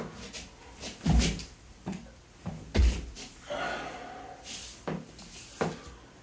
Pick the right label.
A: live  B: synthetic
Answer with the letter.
A